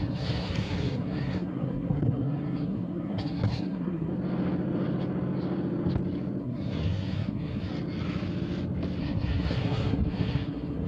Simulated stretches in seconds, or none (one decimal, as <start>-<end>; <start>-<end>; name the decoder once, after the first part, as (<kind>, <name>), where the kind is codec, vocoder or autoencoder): 0.0-4.1 (codec, SNAC); 6.4-7.7; 9.0-10.9